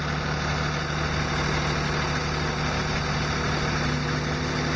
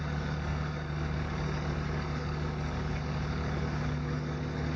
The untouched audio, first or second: first